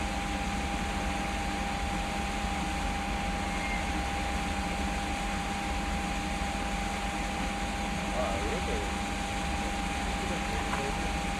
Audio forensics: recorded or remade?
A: recorded